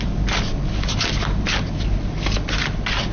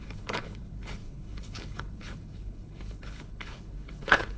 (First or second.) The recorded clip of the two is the first